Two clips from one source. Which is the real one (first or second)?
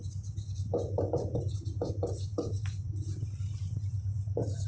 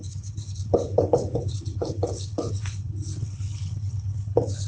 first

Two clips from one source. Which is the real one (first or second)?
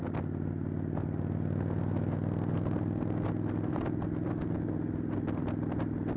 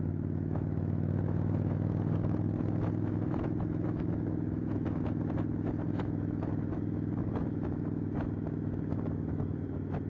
first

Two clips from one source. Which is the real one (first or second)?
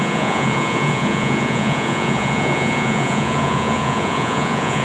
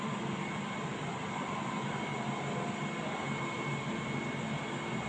second